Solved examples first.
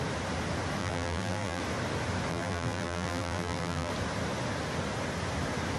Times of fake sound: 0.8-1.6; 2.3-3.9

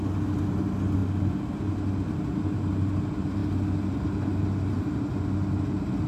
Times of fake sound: none

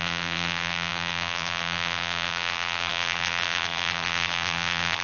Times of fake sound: 0.0-5.0

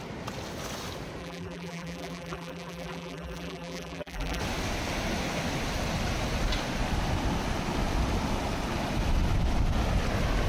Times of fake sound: 1.2-4.4

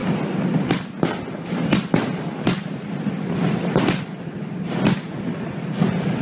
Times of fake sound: none

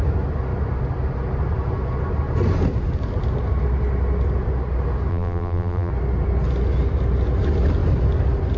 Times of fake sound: 5.1-5.9